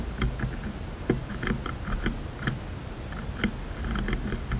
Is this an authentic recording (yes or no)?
yes